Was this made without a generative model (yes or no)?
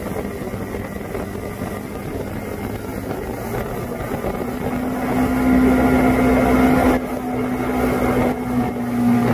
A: yes